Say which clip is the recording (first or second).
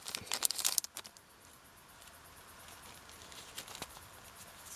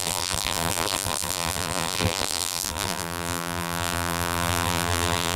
first